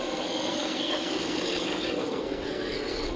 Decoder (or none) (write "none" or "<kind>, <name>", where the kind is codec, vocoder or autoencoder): codec, SNAC